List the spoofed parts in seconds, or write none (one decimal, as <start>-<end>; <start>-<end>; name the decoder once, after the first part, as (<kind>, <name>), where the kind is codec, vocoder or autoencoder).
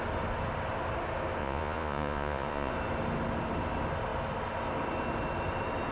1.4-2.7 (vocoder, Vocos)